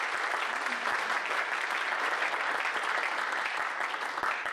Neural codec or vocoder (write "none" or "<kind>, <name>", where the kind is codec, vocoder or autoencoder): none